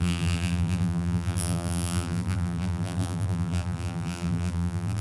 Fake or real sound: fake